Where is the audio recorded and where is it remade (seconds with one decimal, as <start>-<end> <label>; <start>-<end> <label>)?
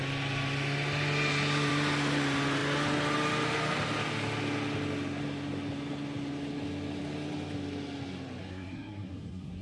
0.0-8.4 recorded; 8.4-9.6 remade